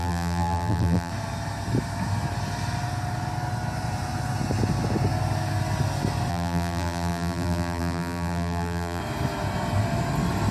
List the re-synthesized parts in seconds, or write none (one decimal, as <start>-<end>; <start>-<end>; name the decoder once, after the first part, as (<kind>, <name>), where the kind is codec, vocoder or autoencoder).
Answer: 0.0-1.1 (vocoder, BigVGAN v2); 6.3-9.0